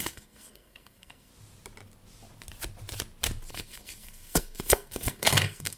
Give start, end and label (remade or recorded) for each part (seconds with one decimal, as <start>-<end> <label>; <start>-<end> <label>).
0.0-1.3 remade; 1.3-3.5 recorded; 3.5-5.8 remade